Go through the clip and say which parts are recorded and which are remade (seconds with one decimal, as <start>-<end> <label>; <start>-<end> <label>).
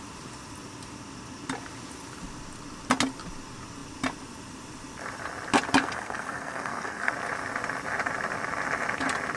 0.0-5.8 recorded; 5.8-7.1 remade; 7.1-9.4 recorded